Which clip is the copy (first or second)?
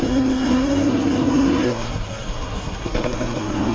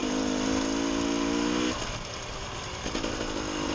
first